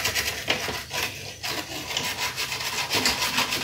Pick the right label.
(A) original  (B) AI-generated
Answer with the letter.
A